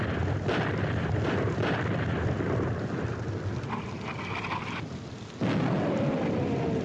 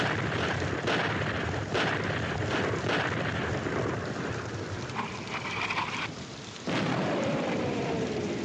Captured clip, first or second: first